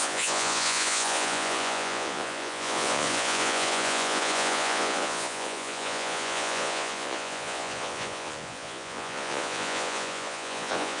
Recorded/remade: remade